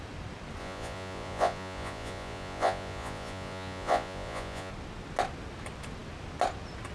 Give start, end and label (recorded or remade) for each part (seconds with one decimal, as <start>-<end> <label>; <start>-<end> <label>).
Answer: 0.0-0.6 recorded; 0.6-4.7 remade; 4.7-6.9 recorded